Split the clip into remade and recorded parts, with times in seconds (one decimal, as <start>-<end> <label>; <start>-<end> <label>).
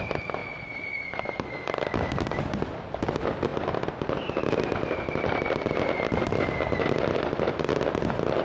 0.0-0.4 recorded; 0.4-2.6 remade; 2.6-3.5 recorded; 3.5-4.3 remade; 4.3-8.4 recorded